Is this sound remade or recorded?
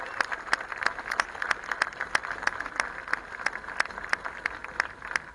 recorded